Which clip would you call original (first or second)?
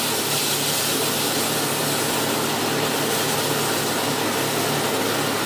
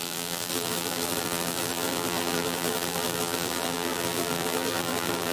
first